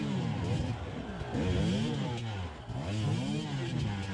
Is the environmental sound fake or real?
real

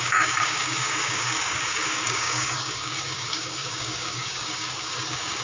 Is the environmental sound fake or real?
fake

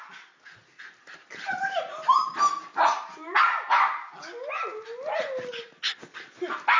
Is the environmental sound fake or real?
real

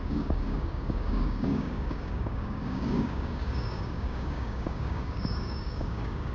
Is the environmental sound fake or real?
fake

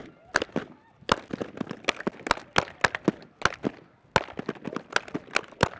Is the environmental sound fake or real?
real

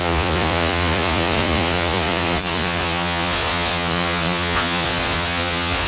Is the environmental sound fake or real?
fake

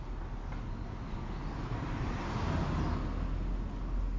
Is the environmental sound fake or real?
real